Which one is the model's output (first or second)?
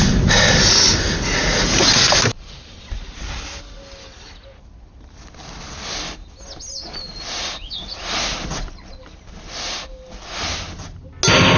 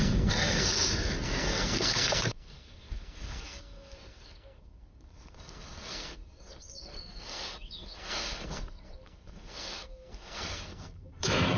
second